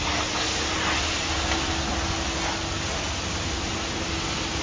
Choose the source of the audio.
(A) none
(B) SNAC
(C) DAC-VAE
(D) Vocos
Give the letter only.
A